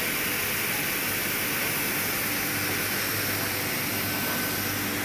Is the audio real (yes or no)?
yes